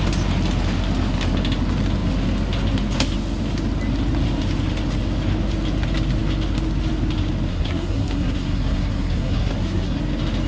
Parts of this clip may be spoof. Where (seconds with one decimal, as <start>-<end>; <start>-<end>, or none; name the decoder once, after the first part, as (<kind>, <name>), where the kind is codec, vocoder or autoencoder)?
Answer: 7.5-10.0 (codec, SNAC)